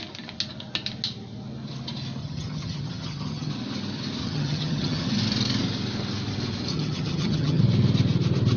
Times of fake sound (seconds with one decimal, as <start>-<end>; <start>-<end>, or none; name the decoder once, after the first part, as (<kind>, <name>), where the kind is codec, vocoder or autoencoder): 2.2-3.5 (vocoder, HiFi-GAN); 4.2-5.1; 6.7-7.6

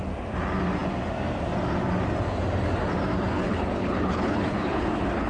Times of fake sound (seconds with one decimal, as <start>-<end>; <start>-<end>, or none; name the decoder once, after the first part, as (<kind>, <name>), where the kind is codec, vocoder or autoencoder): 3.1-5.3 (codec, HILCodec)

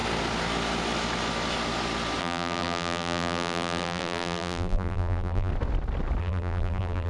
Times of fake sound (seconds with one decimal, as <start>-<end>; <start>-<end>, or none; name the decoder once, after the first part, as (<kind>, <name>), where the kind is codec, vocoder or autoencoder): 2.2-5.5 (vocoder, BigVGAN v2); 6.2-7.1

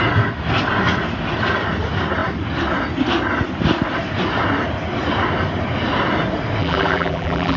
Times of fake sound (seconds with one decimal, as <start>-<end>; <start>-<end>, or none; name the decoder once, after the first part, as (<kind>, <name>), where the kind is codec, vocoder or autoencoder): 6.6-7.6 (vocoder, BigVGAN v2)

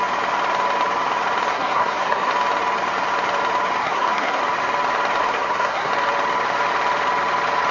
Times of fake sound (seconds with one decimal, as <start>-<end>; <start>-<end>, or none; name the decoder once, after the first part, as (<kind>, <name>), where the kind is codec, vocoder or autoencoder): 1.5-2.3 (codec, SNAC); 3.8-4.4; 5.2-5.9

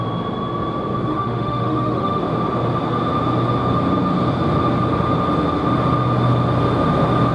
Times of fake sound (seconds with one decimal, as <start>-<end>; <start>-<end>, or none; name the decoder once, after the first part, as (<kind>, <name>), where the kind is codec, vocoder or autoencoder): 1.1-2.2 (autoencoder, DAC-VAE)

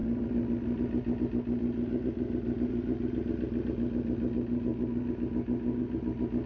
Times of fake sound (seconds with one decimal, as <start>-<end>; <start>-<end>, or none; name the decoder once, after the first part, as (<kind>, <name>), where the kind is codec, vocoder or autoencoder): none